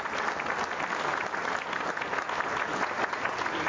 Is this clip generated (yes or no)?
no